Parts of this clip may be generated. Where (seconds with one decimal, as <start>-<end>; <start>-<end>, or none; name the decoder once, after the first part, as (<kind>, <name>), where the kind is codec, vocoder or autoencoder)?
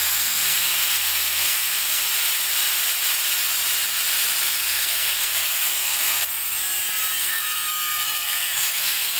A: 0.0-2.1 (codec, SNAC); 4.4-6.6; 7.2-9.2